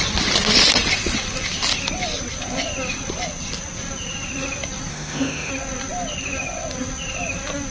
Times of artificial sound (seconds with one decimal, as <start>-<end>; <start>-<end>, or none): 4.9-5.5